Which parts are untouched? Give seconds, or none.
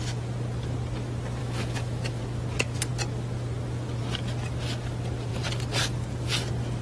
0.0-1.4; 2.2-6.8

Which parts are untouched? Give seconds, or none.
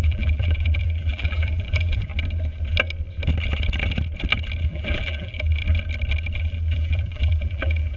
2.1-4.7; 5.6-6.4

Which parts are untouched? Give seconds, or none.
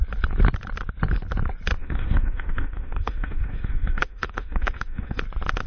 0.0-1.8; 5.2-5.7